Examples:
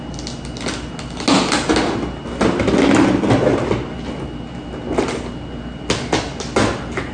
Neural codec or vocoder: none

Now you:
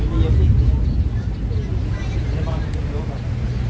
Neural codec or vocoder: none